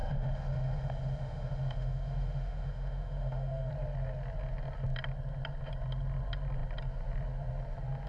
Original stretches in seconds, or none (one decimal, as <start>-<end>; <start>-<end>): 3.7-8.1